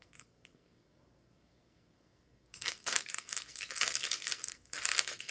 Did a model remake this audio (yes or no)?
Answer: yes